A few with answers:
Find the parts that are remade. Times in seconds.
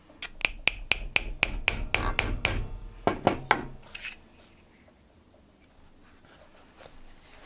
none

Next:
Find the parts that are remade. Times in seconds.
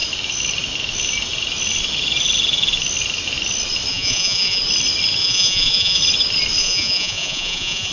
3.9-4.6; 5.2-6.0; 6.6-7.9